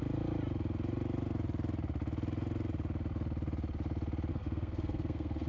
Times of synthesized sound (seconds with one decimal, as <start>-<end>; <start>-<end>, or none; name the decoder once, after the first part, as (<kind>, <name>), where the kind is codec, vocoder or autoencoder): 4.3-5.5 (codec, SNAC)